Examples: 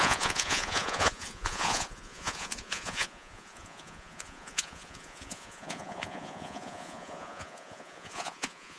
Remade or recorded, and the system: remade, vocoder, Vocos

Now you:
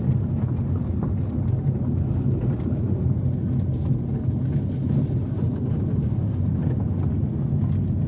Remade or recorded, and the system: recorded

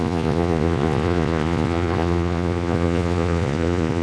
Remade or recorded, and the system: remade, vocoder, Vocos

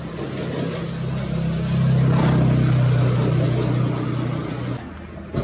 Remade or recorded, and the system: recorded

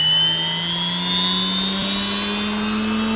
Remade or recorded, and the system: recorded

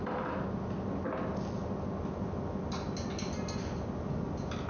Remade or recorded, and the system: recorded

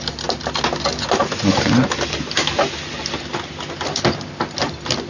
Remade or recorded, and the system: recorded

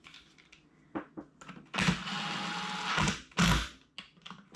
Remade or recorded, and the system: recorded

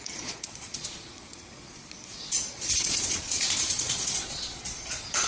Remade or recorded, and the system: remade, vocoder, Vocos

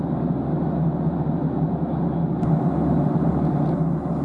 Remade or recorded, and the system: recorded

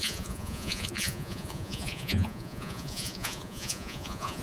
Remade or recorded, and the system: remade, vocoder, Vocos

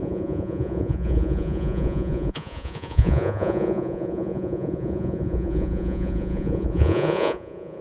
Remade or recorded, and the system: remade, vocoder, Vocos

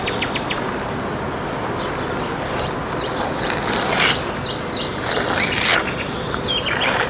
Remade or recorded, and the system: recorded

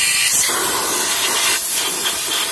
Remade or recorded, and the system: recorded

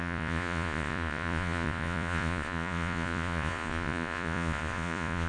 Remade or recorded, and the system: remade, vocoder, Vocos